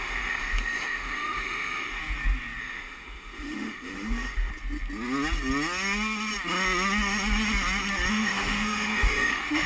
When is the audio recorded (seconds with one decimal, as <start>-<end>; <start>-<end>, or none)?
2.0-2.6; 4.5-8.1